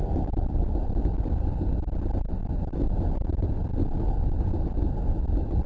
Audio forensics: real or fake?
real